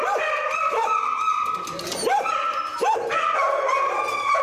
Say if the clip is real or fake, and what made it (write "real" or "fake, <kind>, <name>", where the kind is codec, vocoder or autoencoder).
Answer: real